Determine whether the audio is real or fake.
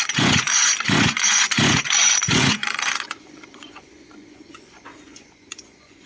fake